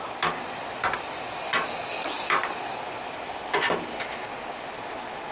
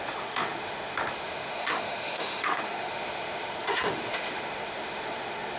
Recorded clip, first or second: first